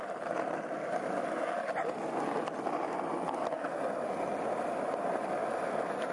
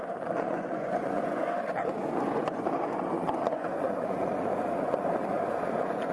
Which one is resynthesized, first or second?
second